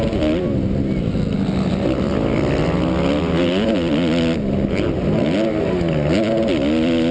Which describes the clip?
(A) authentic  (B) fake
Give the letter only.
A